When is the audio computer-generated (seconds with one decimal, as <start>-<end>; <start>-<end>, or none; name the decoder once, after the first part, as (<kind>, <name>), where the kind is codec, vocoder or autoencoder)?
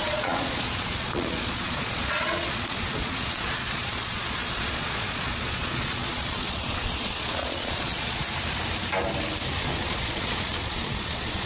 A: 0.0-8.2 (vocoder, Vocos); 9.6-11.5